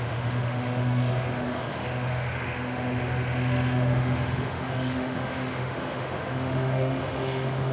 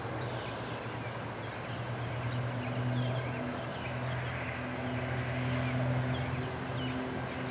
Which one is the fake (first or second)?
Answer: first